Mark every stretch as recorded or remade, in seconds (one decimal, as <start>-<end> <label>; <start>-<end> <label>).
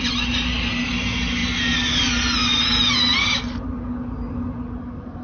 0.0-5.2 recorded